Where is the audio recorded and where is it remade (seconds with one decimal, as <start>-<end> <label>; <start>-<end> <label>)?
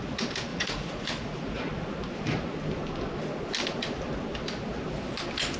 0.0-0.5 recorded; 0.5-1.6 remade; 1.6-5.6 recorded